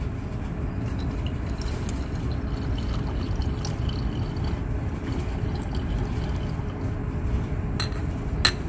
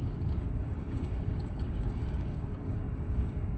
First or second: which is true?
first